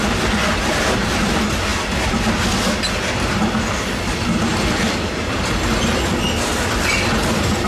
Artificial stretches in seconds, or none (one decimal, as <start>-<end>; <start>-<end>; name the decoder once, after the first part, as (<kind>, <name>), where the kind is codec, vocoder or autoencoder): 4.5-5.4 (vocoder, BigVGAN v2)